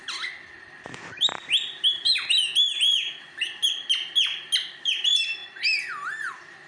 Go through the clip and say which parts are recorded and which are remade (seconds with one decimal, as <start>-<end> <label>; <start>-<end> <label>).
0.0-6.7 recorded